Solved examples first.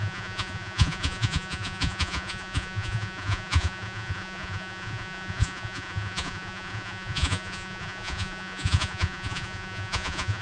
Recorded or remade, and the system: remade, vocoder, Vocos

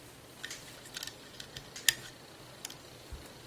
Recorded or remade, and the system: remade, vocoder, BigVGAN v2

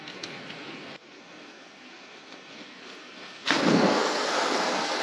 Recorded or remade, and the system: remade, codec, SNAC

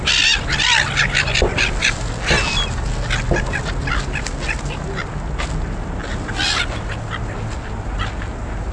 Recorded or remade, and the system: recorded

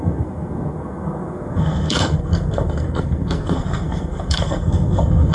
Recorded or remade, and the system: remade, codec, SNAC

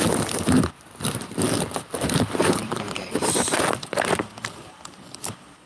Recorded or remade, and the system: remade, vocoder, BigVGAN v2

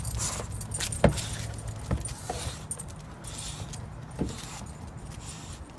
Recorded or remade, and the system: recorded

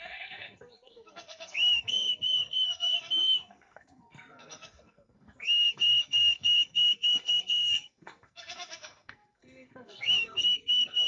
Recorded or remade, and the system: remade, codec, SNAC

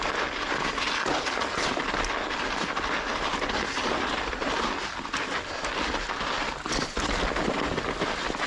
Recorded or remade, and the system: recorded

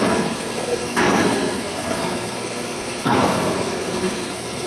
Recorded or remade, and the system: remade, codec, SNAC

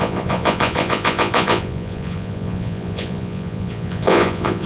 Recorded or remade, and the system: remade, vocoder, Vocos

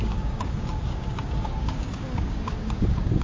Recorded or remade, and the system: remade, codec, DAC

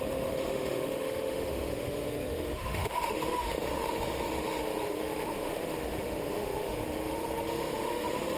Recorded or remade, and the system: remade, autoencoder, DAC-VAE